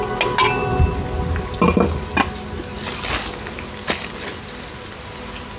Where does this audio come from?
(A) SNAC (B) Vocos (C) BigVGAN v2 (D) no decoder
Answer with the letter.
D